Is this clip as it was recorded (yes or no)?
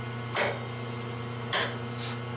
yes